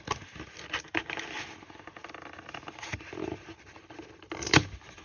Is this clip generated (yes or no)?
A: no